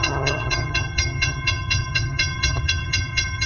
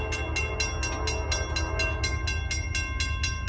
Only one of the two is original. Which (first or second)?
second